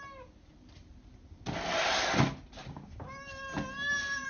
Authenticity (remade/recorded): recorded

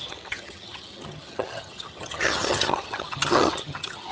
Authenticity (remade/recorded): remade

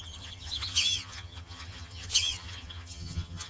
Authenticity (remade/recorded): remade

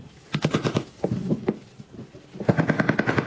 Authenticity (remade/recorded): recorded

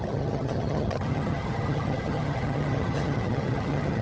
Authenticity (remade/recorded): remade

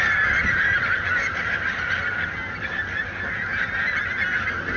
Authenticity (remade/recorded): recorded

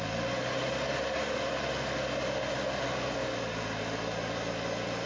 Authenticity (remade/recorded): recorded